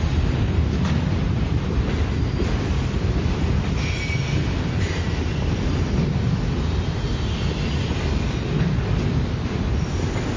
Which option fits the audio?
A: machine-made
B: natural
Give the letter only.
B